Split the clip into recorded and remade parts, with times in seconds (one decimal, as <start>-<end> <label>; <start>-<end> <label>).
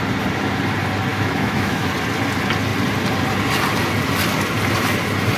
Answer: 0.0-1.1 recorded; 1.1-1.9 remade; 1.9-5.4 recorded